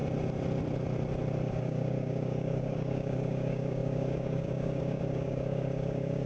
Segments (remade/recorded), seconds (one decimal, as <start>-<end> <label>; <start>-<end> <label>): 0.0-1.5 recorded; 1.5-6.3 remade